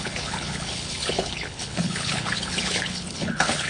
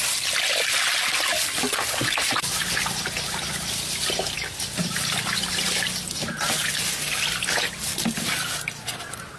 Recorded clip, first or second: second